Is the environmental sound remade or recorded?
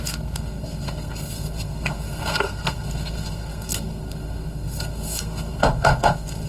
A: remade